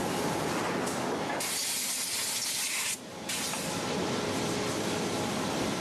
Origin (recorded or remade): recorded